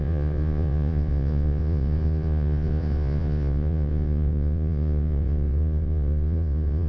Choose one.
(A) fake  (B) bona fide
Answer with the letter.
A